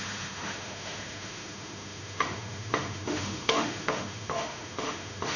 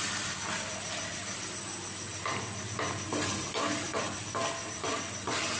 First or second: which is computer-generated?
first